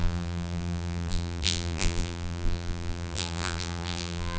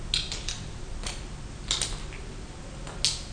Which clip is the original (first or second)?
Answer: second